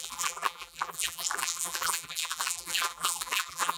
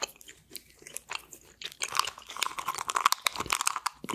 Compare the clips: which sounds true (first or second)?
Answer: second